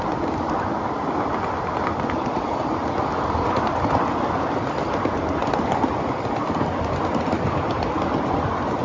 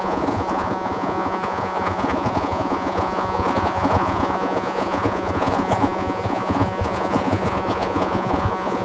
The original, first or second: first